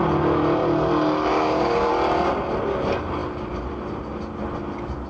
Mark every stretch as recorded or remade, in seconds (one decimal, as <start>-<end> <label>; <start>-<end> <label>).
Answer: 0.0-1.3 recorded; 1.3-1.9 remade; 1.9-5.1 recorded

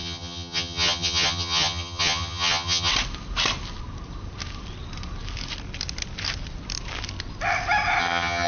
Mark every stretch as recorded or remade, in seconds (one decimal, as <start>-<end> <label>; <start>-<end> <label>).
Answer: 0.0-2.9 remade; 2.9-8.0 recorded; 8.0-8.5 remade

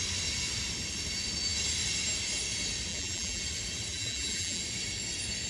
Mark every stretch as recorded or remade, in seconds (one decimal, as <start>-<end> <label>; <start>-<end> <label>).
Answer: 0.0-2.9 recorded; 2.9-3.4 remade; 3.4-3.9 recorded; 3.9-4.6 remade; 4.6-5.5 recorded

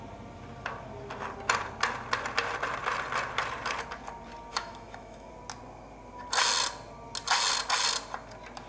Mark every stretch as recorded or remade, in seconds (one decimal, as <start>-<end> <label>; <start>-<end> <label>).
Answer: 0.0-4.5 recorded; 4.5-5.3 remade; 5.3-8.7 recorded

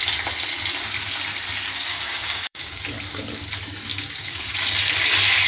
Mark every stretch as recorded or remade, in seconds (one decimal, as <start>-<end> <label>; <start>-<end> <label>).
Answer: 0.0-1.9 recorded; 1.9-2.8 remade; 2.8-3.9 recorded; 3.9-4.4 remade; 4.4-5.5 recorded

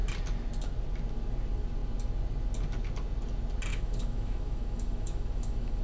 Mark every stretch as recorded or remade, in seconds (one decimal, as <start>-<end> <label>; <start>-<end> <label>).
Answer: 0.0-3.7 recorded; 3.7-5.8 remade

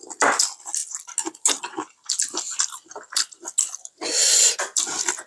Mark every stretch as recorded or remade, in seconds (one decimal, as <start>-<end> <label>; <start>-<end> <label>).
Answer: 0.0-5.3 recorded